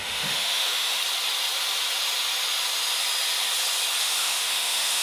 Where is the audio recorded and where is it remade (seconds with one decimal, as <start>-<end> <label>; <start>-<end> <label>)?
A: 0.0-1.0 remade; 1.0-4.0 recorded; 4.0-5.0 remade